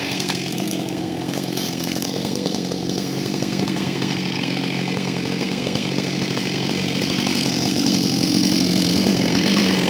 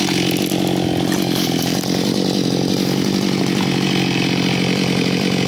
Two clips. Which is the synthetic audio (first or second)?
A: first